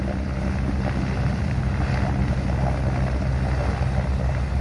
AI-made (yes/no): no